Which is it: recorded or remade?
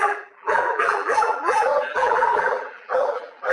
remade